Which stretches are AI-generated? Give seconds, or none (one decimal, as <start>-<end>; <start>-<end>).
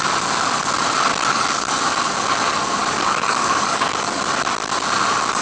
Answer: 1.1-1.7; 2.8-4.2